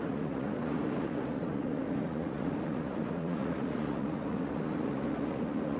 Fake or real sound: fake